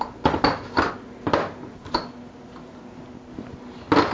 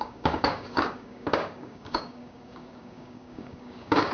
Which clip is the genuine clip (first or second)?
first